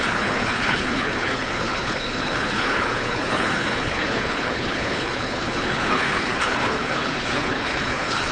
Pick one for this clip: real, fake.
fake